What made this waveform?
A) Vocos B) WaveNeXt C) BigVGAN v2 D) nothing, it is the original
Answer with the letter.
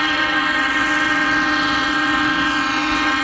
B